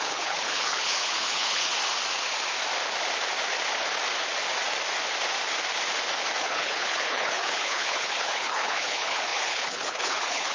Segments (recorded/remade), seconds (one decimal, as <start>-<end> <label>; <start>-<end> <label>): 0.0-1.7 remade; 1.7-6.4 recorded; 6.4-10.5 remade